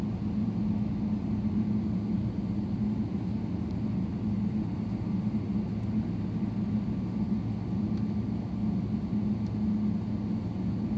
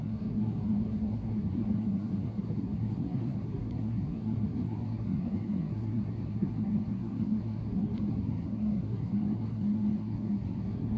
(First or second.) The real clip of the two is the first